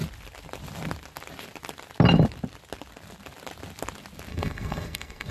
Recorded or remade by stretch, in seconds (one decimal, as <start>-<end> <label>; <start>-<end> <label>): 0.0-4.3 recorded; 4.3-5.3 remade